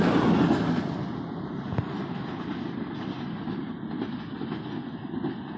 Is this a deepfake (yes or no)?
no